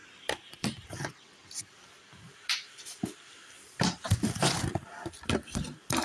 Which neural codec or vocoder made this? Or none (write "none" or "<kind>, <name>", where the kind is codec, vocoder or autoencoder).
vocoder, BigVGAN v2